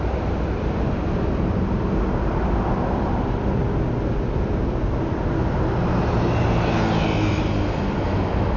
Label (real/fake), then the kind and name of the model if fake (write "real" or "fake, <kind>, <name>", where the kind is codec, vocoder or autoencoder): real